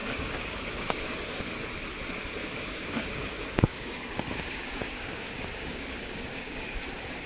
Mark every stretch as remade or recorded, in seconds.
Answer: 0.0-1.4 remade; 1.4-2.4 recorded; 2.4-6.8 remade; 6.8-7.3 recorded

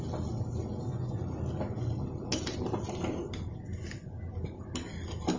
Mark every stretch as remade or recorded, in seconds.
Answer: 0.0-0.9 recorded; 0.9-1.4 remade; 1.4-5.4 recorded

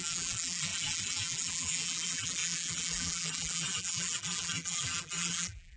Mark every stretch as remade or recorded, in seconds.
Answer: 0.0-5.8 remade